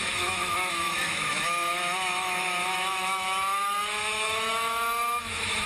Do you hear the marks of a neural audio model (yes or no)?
yes